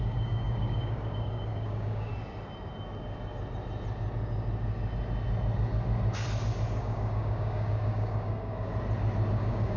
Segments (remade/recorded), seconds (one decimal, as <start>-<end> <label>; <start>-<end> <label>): 0.0-2.1 remade; 2.1-6.8 recorded; 6.8-8.7 remade; 8.7-9.4 recorded; 9.4-9.8 remade

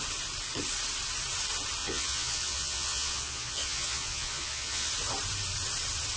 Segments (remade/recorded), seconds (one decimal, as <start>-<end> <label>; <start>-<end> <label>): 0.0-1.8 recorded; 1.8-4.9 remade; 4.9-6.2 recorded